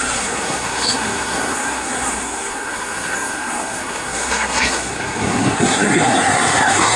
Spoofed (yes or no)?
yes